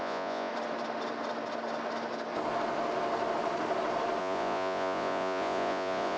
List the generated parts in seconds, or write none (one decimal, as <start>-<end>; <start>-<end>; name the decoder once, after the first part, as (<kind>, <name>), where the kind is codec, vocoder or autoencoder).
0.0-0.5 (vocoder, Vocos); 4.2-6.2